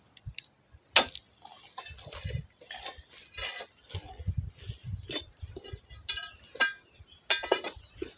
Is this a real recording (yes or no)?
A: yes